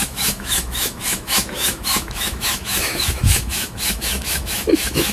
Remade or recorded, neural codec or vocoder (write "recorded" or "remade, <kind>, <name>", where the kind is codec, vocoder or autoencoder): remade, autoencoder, DAC-VAE